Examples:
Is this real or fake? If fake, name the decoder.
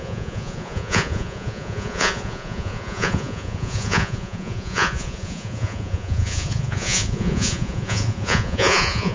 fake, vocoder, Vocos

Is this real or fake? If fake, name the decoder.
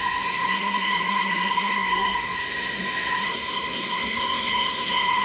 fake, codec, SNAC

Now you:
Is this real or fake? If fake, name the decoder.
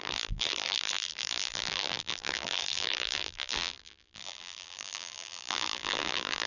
fake, vocoder, BigVGAN v2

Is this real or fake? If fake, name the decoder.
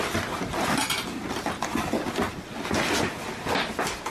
real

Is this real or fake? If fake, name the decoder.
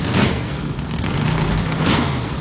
fake, codec, SNAC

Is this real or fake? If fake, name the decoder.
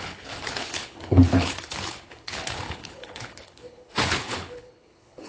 fake, codec, HILCodec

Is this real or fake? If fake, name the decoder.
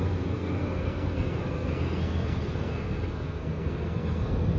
fake, codec, SNAC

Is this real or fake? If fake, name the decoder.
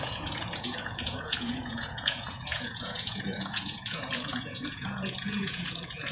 fake, vocoder, Vocos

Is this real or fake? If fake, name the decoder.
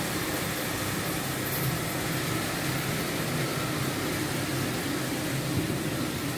real